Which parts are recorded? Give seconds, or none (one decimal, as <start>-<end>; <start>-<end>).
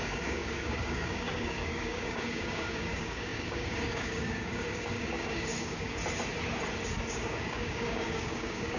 6.0-7.1